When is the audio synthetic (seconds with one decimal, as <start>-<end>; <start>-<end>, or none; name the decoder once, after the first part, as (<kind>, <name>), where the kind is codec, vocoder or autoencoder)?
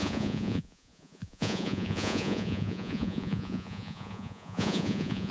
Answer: 0.0-5.3 (vocoder, Vocos)